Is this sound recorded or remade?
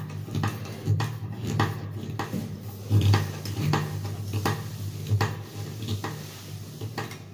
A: recorded